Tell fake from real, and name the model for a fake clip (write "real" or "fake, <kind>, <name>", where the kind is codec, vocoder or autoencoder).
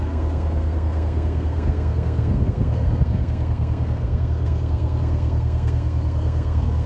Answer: fake, codec, SNAC